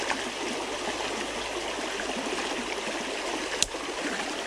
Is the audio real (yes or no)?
yes